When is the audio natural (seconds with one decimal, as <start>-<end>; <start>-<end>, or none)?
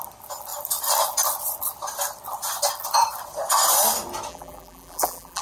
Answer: 0.0-4.3